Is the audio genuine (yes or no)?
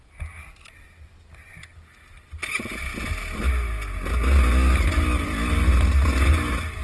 yes